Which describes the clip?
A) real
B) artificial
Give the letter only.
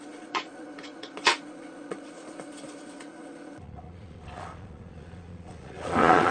B